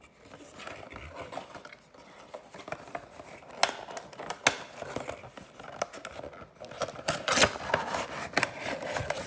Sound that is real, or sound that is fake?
real